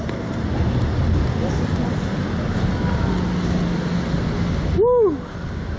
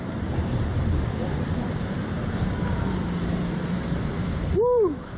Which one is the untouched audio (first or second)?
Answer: first